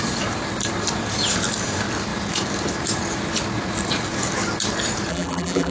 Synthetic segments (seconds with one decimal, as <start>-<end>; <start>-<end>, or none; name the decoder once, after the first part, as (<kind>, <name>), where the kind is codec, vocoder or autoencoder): 5.1-5.7 (vocoder, BigVGAN v2)